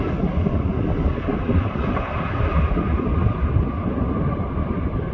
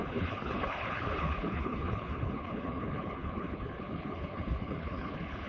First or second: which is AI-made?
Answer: second